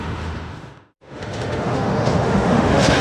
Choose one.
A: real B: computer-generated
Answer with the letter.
B